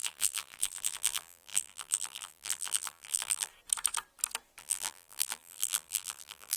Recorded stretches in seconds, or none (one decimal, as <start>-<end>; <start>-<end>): 3.5-4.6